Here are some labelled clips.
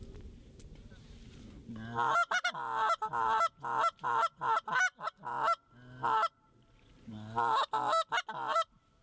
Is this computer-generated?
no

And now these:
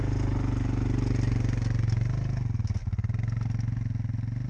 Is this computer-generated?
no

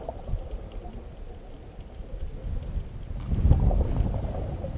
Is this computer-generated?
no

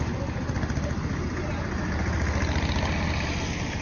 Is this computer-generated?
no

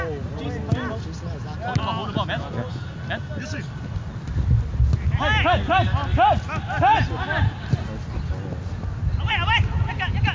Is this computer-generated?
no